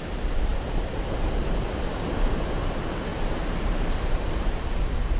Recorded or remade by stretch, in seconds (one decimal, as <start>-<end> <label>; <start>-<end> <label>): 0.0-3.1 recorded; 3.1-5.2 remade